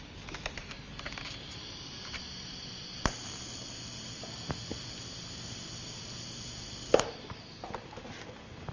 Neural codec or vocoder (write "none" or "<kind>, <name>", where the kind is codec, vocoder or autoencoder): none